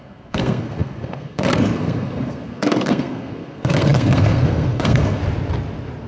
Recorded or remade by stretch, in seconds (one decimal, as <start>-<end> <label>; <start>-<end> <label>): 0.0-5.2 remade; 5.2-6.1 recorded